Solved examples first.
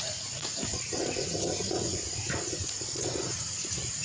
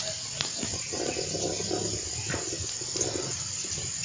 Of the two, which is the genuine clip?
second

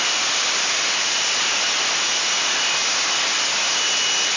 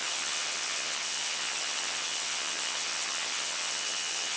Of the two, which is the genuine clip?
first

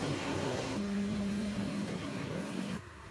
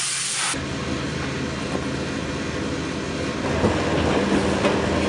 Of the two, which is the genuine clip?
second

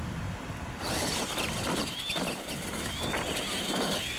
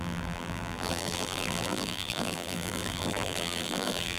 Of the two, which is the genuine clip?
first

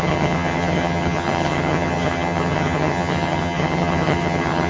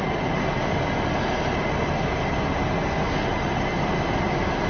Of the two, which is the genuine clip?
second